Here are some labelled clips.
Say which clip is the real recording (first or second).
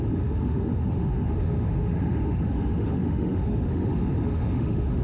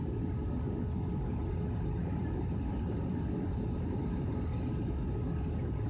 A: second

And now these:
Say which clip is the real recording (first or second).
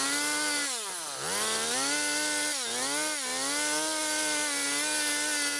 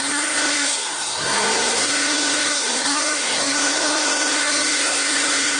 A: first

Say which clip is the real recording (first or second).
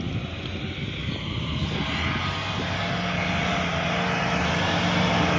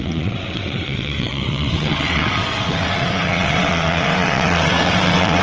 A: first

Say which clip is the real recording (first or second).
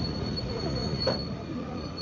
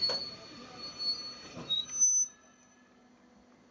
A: second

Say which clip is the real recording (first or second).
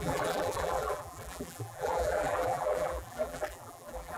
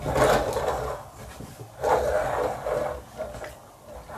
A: second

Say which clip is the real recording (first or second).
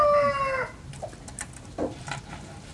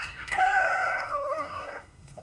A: first